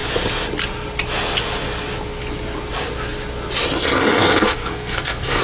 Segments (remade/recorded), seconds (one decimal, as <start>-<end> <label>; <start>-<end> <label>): 0.0-4.2 recorded; 4.2-5.4 remade